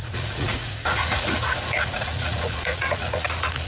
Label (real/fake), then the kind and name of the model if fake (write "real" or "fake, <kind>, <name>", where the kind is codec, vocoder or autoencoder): fake, vocoder, Vocos